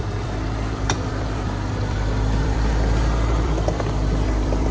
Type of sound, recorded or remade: remade